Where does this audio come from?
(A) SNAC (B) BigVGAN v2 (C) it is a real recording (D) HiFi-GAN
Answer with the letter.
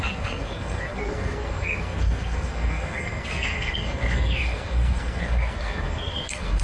A